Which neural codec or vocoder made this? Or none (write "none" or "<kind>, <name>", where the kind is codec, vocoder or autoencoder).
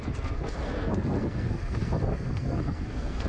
codec, SNAC